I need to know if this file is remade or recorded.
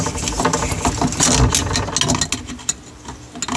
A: recorded